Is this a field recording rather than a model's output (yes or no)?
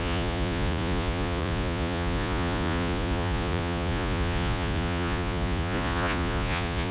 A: no